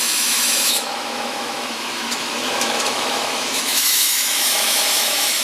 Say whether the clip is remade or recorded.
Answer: remade